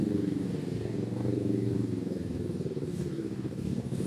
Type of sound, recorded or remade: remade